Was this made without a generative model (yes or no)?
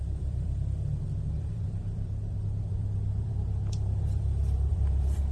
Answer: no